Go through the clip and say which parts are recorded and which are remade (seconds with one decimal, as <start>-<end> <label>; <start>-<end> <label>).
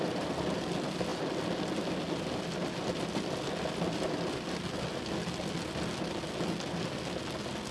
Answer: 0.0-7.7 recorded